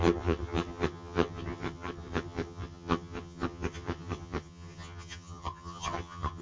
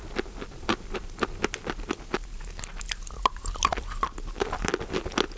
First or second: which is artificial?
first